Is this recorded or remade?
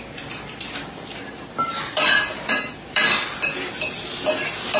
recorded